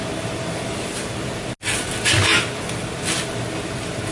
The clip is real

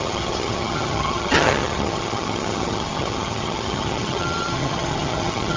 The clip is fake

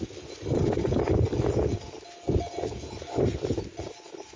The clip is real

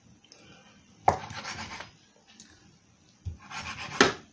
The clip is real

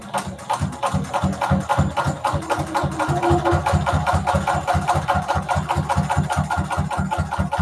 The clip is real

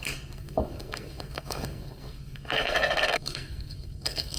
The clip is fake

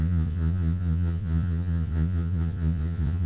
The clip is fake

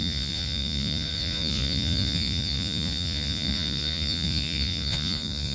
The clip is fake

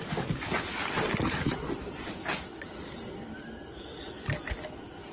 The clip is fake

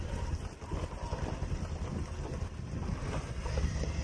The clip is real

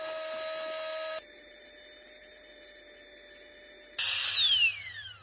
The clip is real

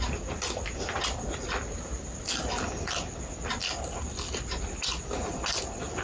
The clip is real